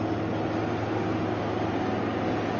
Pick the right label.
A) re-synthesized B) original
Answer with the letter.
B